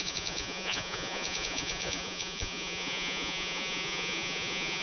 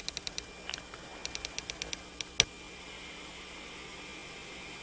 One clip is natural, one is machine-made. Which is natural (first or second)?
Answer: second